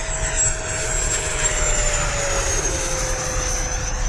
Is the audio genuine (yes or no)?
yes